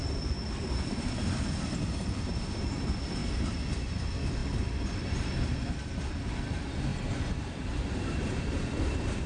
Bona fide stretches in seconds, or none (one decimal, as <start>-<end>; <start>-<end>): 3.2-4.0; 6.9-7.9